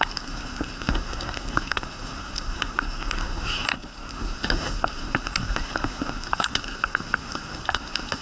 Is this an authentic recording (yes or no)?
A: no